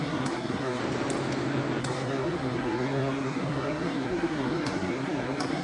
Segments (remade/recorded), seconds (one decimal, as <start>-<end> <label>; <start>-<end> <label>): 0.0-0.8 remade; 0.8-1.8 recorded; 1.8-5.6 remade